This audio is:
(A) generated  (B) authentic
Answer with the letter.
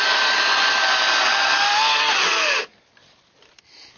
B